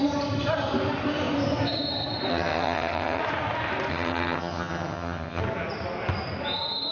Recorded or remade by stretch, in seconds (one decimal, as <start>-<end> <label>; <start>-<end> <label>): 0.0-2.3 recorded; 2.3-3.2 remade; 3.2-3.9 recorded; 3.9-5.4 remade; 5.4-6.9 recorded